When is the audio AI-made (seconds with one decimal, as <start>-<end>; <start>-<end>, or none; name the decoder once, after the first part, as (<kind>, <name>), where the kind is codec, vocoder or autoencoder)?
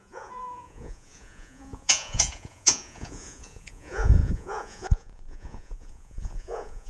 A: 0.0-6.9 (vocoder, Vocos)